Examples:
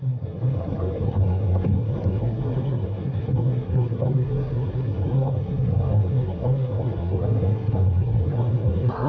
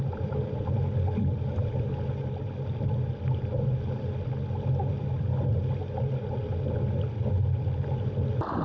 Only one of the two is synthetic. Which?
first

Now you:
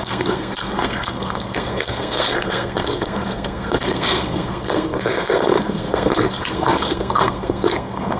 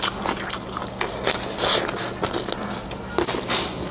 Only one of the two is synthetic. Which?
first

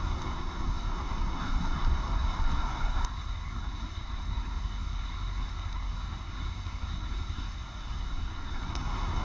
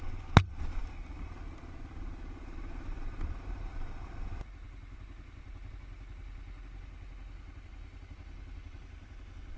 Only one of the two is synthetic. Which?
first